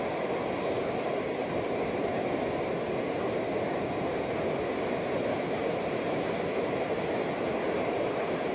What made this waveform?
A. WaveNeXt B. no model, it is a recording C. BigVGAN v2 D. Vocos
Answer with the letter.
B